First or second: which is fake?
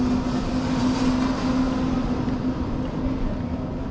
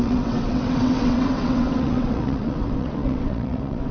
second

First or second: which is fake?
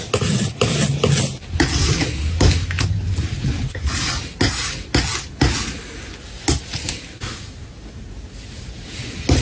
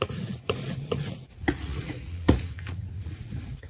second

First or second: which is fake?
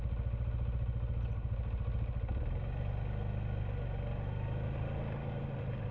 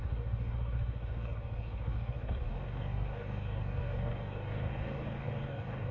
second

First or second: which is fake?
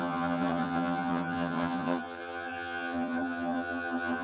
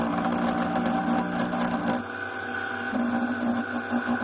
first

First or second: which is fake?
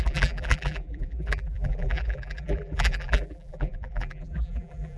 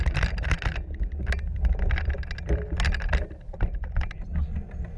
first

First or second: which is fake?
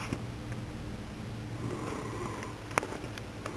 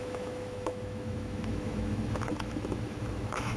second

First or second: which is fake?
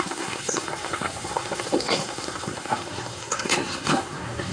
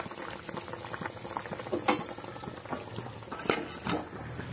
first